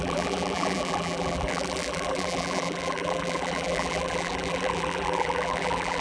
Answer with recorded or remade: remade